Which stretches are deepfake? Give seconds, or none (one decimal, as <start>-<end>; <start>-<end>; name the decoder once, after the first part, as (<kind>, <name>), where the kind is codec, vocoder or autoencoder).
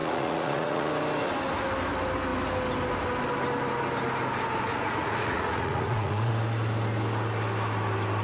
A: 0.0-0.9 (vocoder, Vocos); 4.7-6.3